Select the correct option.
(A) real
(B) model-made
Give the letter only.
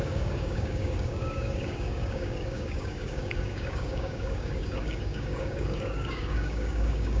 B